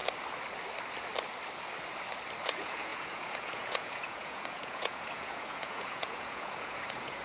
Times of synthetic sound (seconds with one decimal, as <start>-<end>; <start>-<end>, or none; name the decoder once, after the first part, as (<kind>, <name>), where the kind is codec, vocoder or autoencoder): 2.4-7.2 (vocoder, Vocos)